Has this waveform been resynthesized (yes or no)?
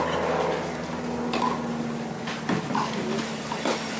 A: no